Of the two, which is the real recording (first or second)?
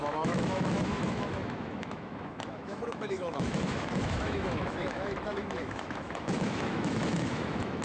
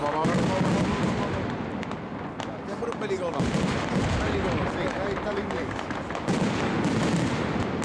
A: second